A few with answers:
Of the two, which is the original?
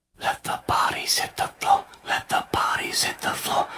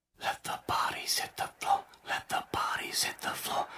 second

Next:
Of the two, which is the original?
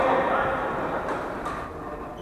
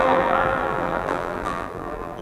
first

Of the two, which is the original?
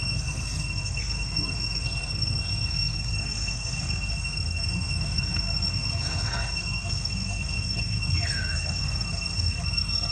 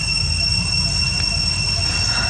second